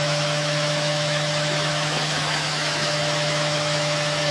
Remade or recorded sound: remade